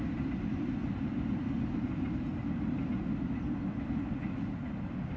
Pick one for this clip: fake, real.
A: real